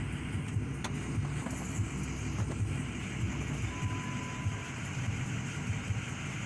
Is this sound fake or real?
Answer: real